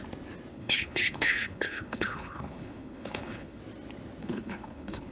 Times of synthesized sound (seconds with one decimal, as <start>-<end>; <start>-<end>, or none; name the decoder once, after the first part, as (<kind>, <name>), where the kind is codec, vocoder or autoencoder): 0.5-3.6 (codec, HILCodec); 4.2-5.1